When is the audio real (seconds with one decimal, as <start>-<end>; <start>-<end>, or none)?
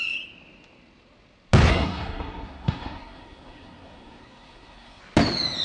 0.0-1.7; 5.0-5.6